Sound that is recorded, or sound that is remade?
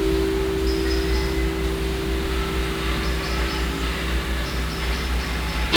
recorded